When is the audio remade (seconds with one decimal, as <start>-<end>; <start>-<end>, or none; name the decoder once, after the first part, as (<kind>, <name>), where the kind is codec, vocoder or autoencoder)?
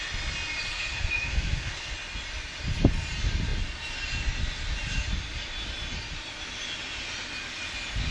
0.7-1.9 (codec, SNAC)